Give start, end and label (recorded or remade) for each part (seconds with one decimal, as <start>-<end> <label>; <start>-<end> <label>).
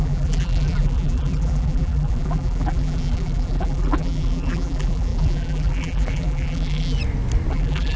0.0-7.0 remade; 7.0-7.5 recorded; 7.5-8.0 remade